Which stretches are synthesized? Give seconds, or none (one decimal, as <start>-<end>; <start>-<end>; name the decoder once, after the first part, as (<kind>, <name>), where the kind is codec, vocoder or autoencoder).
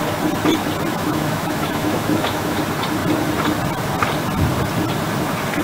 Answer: 0.9-2.6 (autoencoder, DAC-VAE)